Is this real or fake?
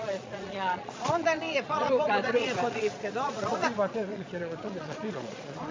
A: fake